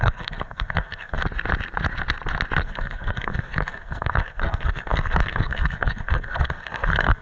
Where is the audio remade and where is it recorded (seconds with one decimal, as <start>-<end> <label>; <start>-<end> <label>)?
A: 0.0-1.2 remade; 1.2-2.6 recorded; 2.6-7.2 remade